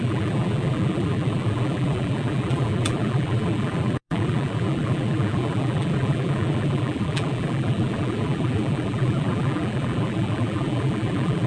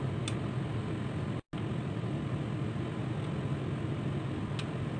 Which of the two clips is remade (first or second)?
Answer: first